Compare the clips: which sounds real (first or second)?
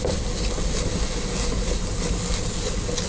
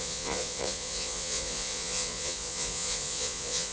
first